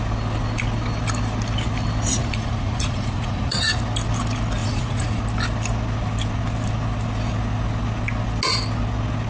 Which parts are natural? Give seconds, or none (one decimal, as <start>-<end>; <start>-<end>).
0.0-2.2; 3.8-4.6; 5.2-9.3